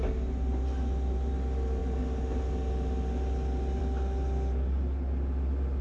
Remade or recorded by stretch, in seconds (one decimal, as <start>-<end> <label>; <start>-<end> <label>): 0.0-5.8 recorded